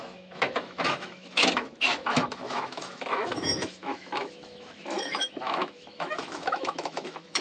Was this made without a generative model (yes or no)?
no